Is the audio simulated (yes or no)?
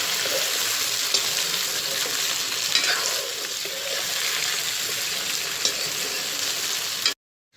no